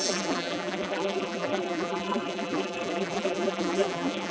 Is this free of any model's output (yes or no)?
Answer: no